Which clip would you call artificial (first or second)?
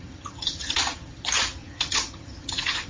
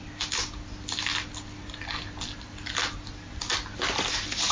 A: first